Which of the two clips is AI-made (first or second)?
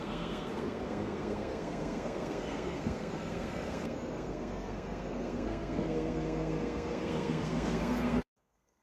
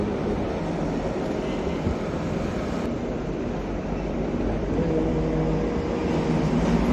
first